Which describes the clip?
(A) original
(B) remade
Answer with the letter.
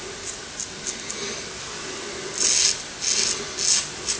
A